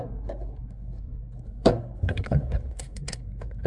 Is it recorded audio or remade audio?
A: remade